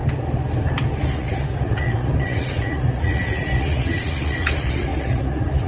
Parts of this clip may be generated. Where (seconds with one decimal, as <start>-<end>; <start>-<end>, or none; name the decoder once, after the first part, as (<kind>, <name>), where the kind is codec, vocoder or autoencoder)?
1.0-5.7 (vocoder, Vocos)

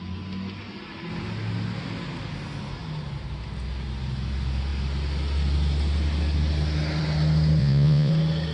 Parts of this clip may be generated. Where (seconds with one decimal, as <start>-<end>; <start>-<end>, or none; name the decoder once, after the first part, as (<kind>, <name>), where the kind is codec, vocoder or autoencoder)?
7.6-8.1 (vocoder, Vocos)